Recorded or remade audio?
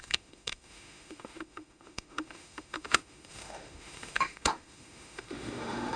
remade